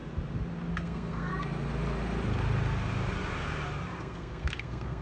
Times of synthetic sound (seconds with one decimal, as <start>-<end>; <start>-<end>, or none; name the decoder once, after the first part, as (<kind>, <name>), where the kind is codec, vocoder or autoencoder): 0.7-1.3 (codec, SNAC); 4.0-5.0